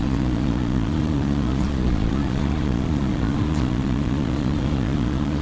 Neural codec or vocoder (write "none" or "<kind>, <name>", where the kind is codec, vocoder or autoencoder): vocoder, Vocos